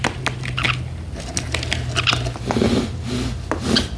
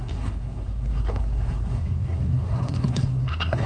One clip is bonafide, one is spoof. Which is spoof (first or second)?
second